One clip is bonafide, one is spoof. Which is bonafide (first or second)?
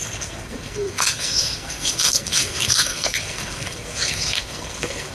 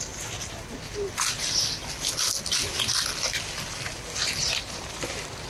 second